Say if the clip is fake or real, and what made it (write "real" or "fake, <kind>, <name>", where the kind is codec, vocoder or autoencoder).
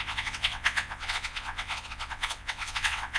fake, vocoder, WaveNeXt